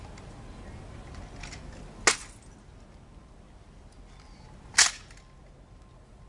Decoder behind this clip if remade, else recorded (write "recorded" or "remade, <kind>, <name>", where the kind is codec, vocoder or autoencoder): recorded